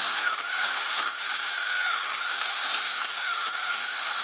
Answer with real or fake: fake